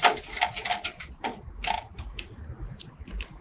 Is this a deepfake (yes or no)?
yes